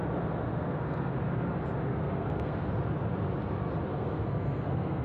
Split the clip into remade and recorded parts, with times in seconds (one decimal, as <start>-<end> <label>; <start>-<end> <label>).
0.0-0.5 recorded; 0.5-1.1 remade; 1.1-1.9 recorded; 1.9-2.7 remade; 2.7-3.9 recorded; 3.9-5.0 remade